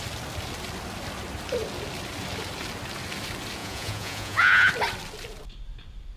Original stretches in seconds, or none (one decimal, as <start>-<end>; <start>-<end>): 0.0-3.6; 4.7-6.2